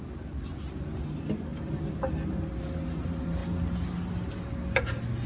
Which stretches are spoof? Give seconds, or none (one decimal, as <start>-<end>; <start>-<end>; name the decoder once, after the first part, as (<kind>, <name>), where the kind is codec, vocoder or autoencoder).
none